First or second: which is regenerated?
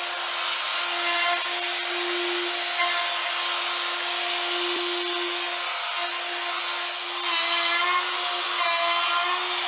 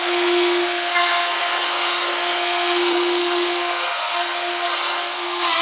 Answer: second